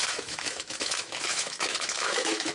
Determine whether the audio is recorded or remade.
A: remade